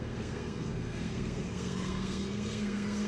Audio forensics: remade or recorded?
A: remade